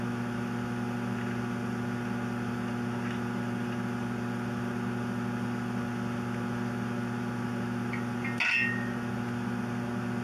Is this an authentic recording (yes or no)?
yes